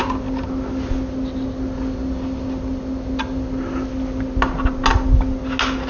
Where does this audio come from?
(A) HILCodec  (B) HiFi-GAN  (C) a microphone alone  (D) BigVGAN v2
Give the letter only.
C